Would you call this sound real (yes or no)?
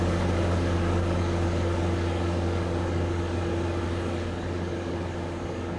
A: no